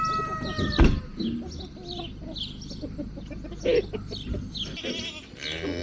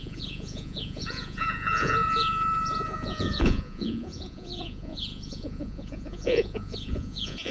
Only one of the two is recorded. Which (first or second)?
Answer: first